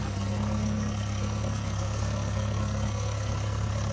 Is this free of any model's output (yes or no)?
no